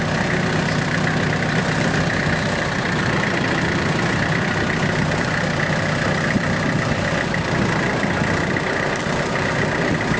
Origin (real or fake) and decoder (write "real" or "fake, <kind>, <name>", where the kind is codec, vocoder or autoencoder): fake, vocoder, BigVGAN v2